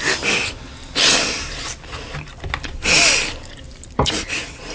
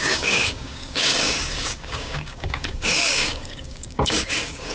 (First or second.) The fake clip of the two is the second